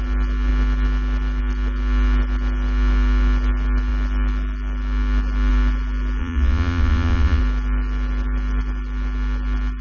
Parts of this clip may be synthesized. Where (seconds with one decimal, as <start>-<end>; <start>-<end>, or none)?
6.2-7.4